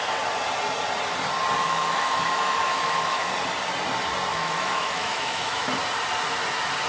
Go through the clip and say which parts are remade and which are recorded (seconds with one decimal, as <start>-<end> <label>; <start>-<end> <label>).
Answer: 0.0-1.6 recorded; 1.6-3.3 remade; 3.3-4.3 recorded; 4.3-5.7 remade; 5.7-6.9 recorded